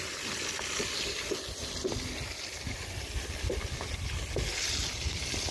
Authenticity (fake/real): real